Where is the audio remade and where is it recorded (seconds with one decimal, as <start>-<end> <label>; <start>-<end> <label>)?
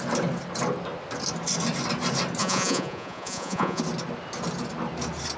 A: 0.0-2.4 recorded; 2.4-3.8 remade; 3.8-5.4 recorded